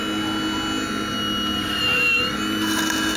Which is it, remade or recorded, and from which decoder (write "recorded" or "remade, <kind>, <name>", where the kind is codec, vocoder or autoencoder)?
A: recorded